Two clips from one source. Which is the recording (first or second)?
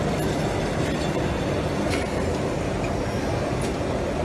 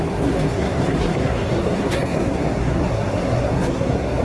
first